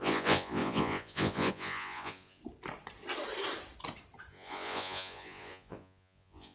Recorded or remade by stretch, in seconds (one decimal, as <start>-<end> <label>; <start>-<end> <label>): 0.0-2.4 remade; 2.4-4.3 recorded; 4.3-6.5 remade